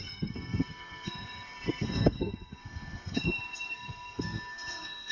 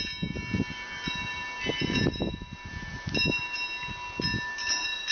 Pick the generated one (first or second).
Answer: first